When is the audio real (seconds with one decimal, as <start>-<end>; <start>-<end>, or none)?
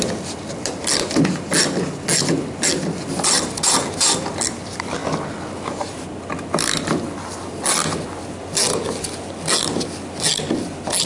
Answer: 0.0-11.1